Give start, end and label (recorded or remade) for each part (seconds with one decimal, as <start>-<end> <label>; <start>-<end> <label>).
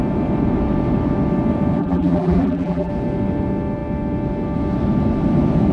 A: 0.0-1.8 recorded; 1.8-2.9 remade; 2.9-5.7 recorded